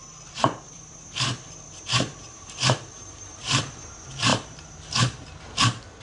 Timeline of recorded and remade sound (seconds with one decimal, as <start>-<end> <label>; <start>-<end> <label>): 0.0-3.6 remade; 3.6-4.3 recorded; 4.3-5.4 remade; 5.4-6.0 recorded